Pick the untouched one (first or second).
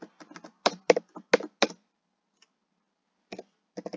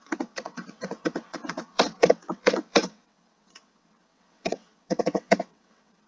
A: first